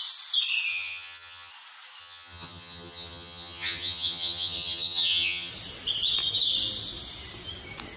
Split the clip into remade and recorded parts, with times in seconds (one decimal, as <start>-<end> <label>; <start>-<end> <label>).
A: 0.0-0.7 recorded; 0.7-1.5 remade; 1.5-2.0 recorded; 2.0-5.5 remade; 5.5-8.0 recorded